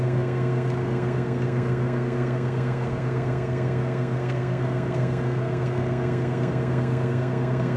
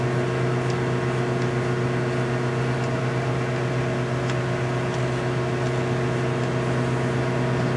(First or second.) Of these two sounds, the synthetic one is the first